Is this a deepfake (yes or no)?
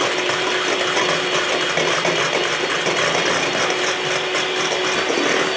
no